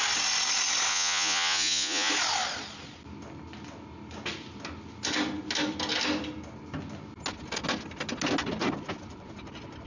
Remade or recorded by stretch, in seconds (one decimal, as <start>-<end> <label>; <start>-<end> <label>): 0.0-0.9 recorded; 0.9-2.1 remade; 2.1-9.9 recorded